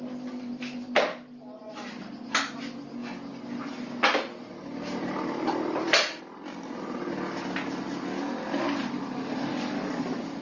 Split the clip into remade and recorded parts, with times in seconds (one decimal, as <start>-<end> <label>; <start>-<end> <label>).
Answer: 0.0-10.4 recorded